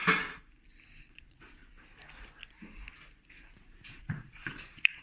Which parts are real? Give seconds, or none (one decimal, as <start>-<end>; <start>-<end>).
0.0-1.0; 1.6-4.0